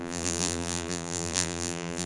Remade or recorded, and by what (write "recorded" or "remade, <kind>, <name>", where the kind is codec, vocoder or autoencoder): remade, vocoder, BigVGAN v2